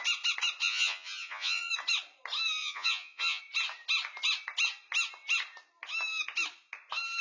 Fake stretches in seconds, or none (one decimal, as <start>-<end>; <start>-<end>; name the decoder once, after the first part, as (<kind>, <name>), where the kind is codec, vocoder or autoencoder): 0.6-1.7 (vocoder, Vocos); 2.6-3.4